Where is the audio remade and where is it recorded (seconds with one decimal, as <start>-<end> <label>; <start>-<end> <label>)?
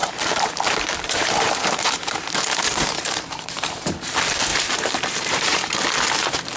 0.0-4.0 remade; 4.0-4.5 recorded; 4.5-5.7 remade; 5.7-6.6 recorded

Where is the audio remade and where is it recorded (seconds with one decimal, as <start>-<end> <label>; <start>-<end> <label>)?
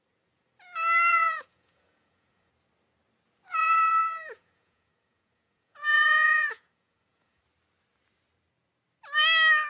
0.0-1.1 recorded; 1.1-2.5 remade; 2.5-3.6 recorded; 3.6-7.4 remade; 7.4-9.7 recorded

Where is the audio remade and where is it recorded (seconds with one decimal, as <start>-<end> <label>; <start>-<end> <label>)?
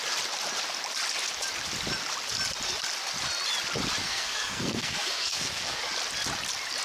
0.0-4.0 recorded; 4.0-5.8 remade; 5.8-6.8 recorded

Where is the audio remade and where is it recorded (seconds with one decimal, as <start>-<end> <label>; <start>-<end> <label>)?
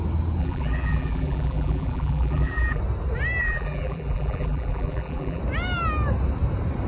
0.0-0.4 recorded; 0.4-2.8 remade; 2.8-3.4 recorded; 3.4-5.4 remade; 5.4-6.9 recorded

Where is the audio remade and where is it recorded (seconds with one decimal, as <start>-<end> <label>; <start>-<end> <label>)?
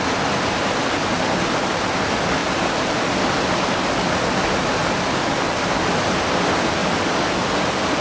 0.0-8.0 recorded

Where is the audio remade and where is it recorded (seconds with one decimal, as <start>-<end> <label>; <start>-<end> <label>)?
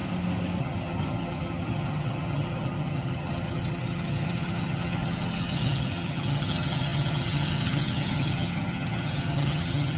0.0-0.6 recorded; 0.6-10.0 remade